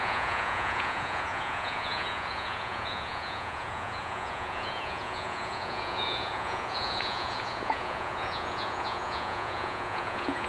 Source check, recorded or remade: remade